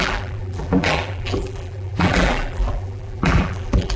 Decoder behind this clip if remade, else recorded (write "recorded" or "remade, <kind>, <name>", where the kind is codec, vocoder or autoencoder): remade, vocoder, BigVGAN v2